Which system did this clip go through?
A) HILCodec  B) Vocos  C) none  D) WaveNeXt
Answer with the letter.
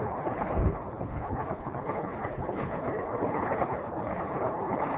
A